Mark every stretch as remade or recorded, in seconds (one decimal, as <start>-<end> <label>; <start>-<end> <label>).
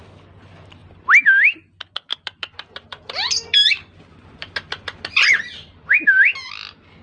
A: 0.0-0.8 recorded; 0.8-1.3 remade; 1.3-2.1 recorded; 2.1-6.3 remade; 6.3-7.0 recorded